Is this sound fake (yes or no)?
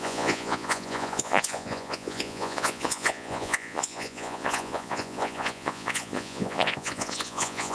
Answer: yes